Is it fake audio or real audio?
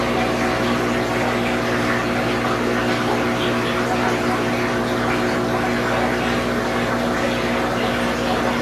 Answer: real